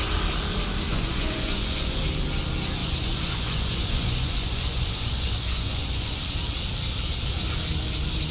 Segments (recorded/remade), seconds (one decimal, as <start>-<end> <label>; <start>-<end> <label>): 0.0-0.9 recorded; 0.9-2.0 remade; 2.0-2.8 recorded; 2.8-6.2 remade; 6.2-8.3 recorded